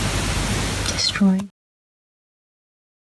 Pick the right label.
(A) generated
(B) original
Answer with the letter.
B